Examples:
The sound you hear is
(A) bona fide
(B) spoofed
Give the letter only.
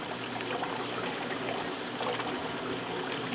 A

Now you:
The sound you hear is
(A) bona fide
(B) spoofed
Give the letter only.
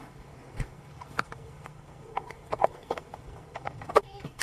B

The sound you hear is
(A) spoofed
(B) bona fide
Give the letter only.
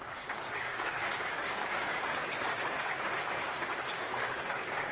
A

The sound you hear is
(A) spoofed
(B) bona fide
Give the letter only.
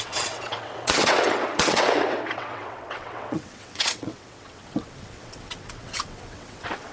A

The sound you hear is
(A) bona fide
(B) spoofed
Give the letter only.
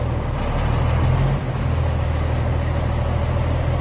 A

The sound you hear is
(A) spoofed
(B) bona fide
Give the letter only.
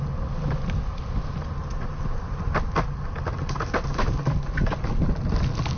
B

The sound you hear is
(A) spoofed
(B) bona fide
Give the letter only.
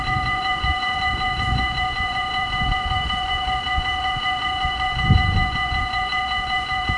A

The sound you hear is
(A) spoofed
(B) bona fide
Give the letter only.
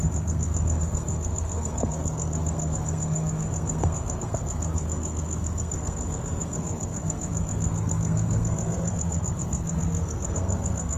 A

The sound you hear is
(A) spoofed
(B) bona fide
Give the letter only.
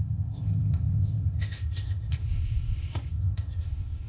A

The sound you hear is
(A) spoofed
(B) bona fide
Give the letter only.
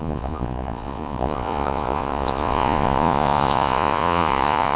A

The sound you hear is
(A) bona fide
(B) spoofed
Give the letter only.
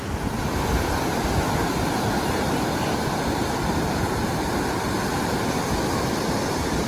A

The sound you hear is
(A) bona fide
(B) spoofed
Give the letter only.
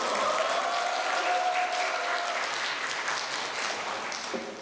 A